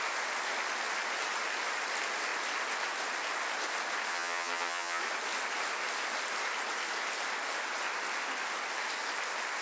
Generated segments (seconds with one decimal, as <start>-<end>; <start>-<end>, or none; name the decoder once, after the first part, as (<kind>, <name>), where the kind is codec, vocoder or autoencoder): 4.1-5.0 (vocoder, HiFi-GAN)

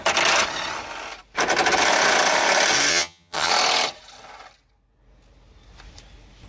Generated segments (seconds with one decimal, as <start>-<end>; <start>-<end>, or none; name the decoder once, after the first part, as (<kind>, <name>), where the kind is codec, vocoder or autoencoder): 2.9-3.5 (vocoder, HiFi-GAN)

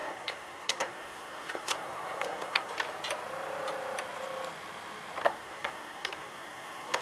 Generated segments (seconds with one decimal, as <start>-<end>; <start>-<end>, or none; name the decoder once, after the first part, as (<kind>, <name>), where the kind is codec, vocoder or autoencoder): 0.0-2.7 (codec, SNAC); 5.2-7.0

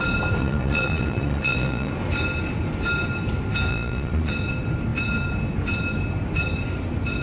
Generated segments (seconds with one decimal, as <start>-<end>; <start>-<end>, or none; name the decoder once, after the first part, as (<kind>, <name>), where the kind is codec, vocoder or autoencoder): 0.4-1.9 (vocoder, Vocos); 3.7-4.3

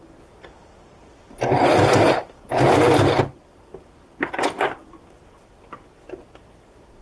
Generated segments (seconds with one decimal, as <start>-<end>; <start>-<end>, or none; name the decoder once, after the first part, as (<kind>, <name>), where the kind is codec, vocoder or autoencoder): none